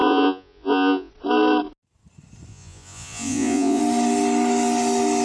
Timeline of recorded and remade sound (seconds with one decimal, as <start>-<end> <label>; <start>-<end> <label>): 0.0-1.1 remade; 1.1-2.5 recorded; 2.5-3.8 remade; 3.8-5.2 recorded